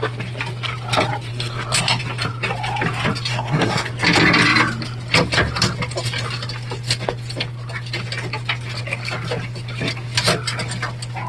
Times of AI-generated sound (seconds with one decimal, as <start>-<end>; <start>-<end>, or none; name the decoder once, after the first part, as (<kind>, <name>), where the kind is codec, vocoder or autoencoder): 1.3-2.0 (codec, SNAC); 3.3-3.9